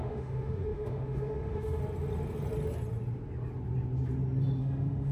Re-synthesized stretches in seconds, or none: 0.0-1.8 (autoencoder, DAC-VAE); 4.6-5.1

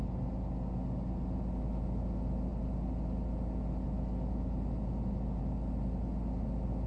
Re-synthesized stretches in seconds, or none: none